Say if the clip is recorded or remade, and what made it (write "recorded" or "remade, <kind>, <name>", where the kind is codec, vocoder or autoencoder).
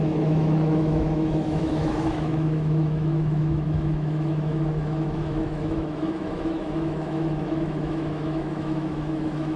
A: remade, autoencoder, DAC-VAE